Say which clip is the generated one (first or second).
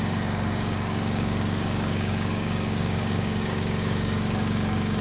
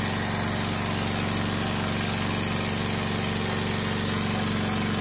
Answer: first